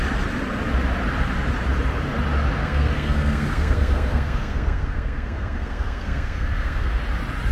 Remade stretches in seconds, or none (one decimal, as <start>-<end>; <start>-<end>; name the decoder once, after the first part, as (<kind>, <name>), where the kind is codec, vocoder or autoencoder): 2.6-7.0 (codec, SNAC)